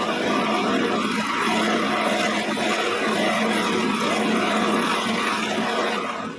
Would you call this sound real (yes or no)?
yes